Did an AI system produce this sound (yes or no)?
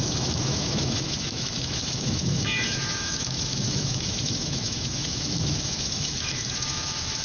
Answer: yes